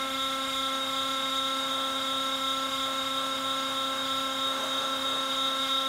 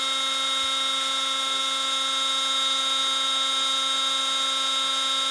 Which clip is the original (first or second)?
second